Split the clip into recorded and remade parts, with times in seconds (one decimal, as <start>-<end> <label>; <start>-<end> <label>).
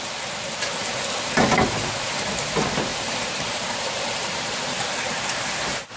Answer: 0.0-2.9 recorded; 2.9-5.4 remade; 5.4-6.0 recorded